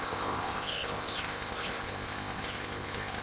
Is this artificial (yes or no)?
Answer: yes